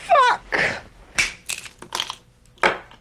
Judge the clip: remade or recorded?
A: recorded